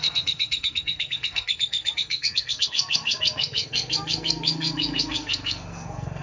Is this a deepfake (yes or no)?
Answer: yes